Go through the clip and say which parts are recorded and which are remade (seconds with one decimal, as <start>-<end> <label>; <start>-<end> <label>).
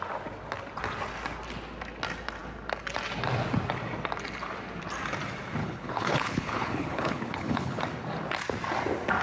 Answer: 0.0-5.6 recorded; 5.6-7.8 remade; 7.8-9.2 recorded